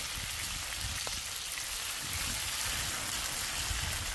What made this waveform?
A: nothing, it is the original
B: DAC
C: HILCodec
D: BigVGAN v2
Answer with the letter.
A